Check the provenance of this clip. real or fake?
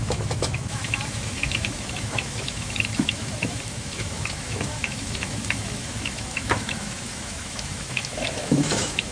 fake